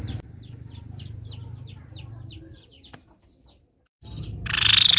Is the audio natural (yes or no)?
yes